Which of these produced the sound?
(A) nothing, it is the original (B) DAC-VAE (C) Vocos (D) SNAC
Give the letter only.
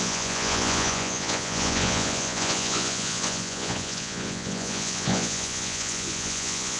C